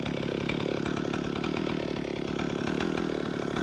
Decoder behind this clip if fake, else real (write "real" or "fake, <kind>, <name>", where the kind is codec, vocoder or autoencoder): real